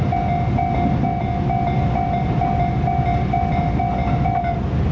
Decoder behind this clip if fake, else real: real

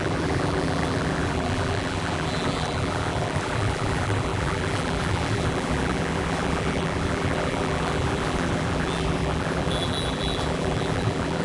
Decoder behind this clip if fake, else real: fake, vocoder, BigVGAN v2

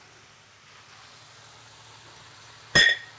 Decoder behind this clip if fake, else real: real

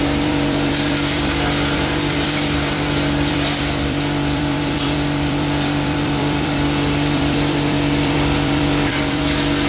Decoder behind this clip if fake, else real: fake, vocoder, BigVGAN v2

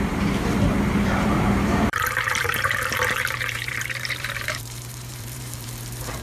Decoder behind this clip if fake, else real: fake, vocoder, BigVGAN v2